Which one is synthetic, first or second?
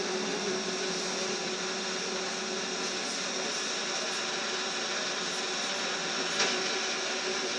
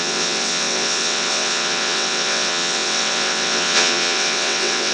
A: second